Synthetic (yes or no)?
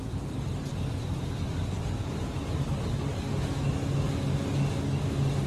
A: no